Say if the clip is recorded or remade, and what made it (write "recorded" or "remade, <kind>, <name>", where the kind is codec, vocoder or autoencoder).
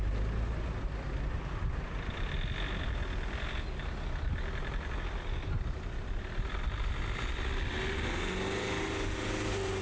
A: recorded